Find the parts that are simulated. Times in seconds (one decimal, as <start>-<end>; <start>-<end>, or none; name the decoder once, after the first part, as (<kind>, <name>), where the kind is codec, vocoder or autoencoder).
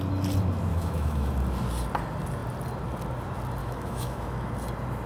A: 0.7-1.3 (autoencoder, DAC-VAE); 3.6-4.5